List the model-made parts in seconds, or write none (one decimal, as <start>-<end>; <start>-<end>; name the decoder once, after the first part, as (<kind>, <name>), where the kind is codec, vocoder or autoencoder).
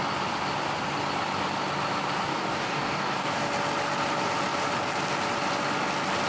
2.3-3.4 (codec, DAC)